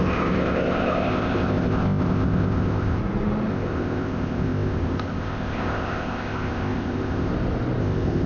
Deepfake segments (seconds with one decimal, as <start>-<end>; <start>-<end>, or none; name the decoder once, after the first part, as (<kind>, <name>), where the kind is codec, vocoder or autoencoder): 0.0-3.0 (codec, ZipCodec); 3.5-7.3; 7.8-8.3